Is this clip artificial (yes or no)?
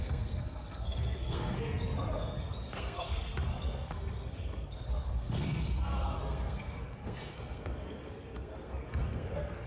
yes